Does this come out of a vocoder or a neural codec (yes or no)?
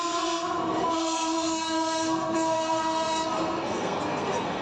yes